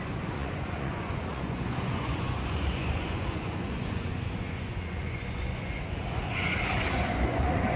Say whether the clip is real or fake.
fake